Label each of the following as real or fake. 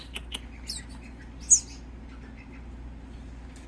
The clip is real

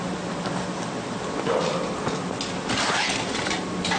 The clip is real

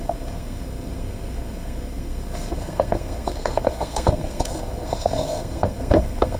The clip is fake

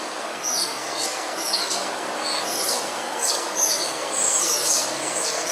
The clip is fake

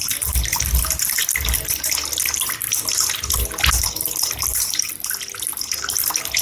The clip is real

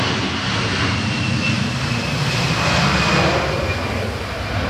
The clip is real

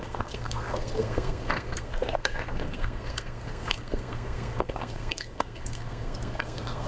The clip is fake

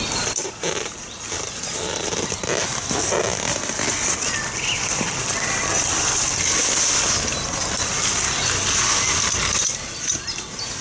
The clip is real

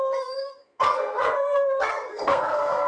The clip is fake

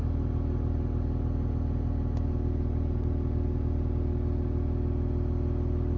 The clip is real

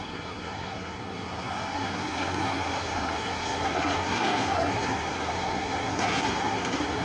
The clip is fake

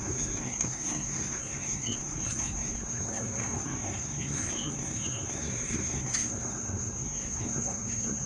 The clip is fake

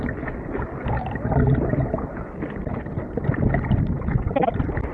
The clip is real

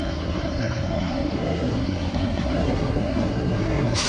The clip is fake